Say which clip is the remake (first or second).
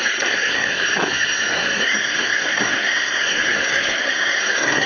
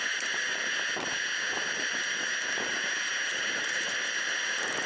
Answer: first